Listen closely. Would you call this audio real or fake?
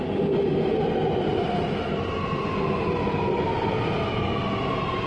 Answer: real